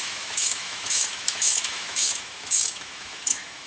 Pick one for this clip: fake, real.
fake